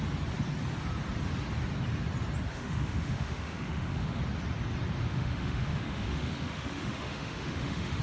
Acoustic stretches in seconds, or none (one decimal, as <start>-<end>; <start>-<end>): 0.0-2.5; 4.2-5.1